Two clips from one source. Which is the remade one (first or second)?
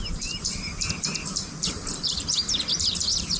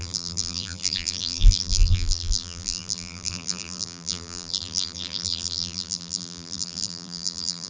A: second